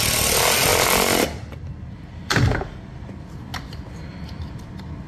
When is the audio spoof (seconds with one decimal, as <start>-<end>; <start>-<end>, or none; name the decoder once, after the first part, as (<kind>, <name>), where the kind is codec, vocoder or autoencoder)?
3.5-4.6 (vocoder, BigVGAN v2)

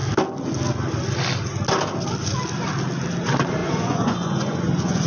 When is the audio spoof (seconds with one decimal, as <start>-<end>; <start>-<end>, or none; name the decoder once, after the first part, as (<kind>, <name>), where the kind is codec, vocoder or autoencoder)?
3.6-5.1 (vocoder, Vocos)